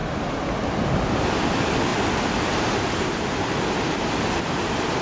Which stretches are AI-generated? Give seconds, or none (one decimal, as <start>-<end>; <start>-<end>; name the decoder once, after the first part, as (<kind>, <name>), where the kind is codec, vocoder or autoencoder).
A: none